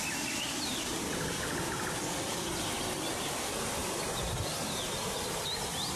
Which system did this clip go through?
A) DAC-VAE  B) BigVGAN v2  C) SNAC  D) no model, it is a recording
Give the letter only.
D